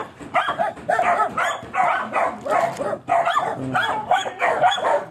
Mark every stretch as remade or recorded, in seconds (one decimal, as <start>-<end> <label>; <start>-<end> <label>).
0.0-4.0 recorded; 4.0-5.1 remade